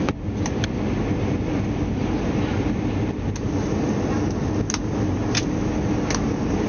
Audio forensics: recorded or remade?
recorded